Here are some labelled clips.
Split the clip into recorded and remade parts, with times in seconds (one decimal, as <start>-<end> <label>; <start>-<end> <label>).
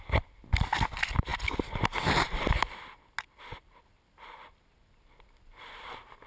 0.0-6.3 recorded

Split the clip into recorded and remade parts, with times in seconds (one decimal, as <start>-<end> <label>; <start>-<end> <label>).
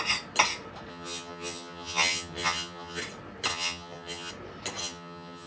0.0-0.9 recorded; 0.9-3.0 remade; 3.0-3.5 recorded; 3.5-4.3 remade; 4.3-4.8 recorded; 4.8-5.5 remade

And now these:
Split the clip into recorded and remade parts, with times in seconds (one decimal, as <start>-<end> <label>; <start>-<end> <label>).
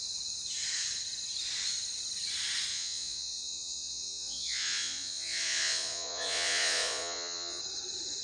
0.0-2.7 recorded; 2.7-7.6 remade; 7.6-8.2 recorded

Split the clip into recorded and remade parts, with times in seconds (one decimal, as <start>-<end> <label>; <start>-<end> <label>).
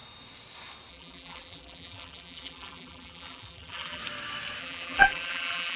0.0-0.9 recorded; 0.9-4.0 remade; 4.0-4.6 recorded; 4.6-5.8 remade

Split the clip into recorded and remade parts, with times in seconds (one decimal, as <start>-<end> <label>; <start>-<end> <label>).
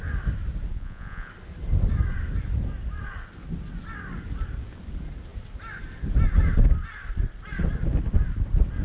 0.0-0.7 recorded; 0.7-1.3 remade; 1.3-8.8 recorded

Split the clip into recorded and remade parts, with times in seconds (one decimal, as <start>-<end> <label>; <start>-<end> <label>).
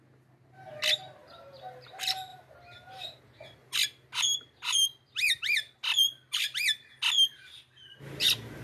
0.0-1.2 recorded; 1.2-1.9 remade; 1.9-2.3 recorded; 2.3-3.2 remade; 3.2-8.6 recorded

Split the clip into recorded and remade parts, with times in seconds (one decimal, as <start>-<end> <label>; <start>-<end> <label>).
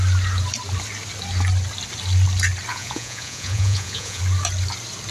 0.0-2.7 recorded; 2.7-4.2 remade; 4.2-5.1 recorded